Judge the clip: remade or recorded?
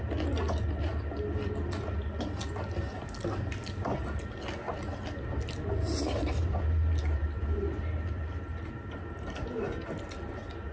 recorded